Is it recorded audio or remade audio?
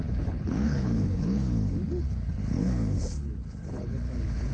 remade